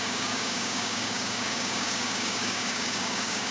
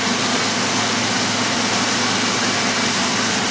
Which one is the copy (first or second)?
first